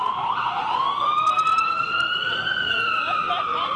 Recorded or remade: recorded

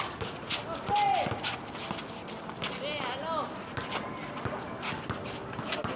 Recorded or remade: recorded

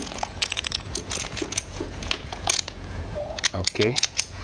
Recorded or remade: remade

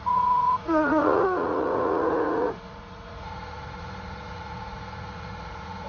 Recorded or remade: remade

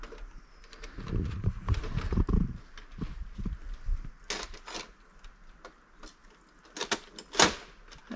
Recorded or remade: recorded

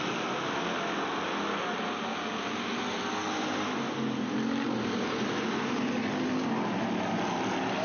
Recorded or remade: recorded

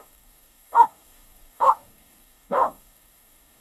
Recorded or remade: remade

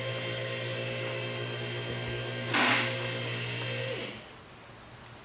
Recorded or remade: recorded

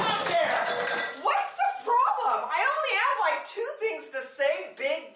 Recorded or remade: recorded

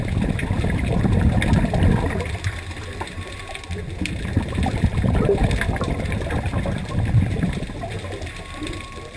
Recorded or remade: remade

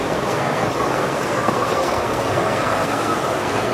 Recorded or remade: remade